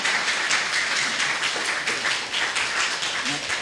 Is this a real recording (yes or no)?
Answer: yes